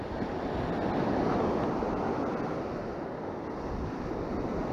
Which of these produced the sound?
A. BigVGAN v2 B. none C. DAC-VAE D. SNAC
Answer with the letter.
B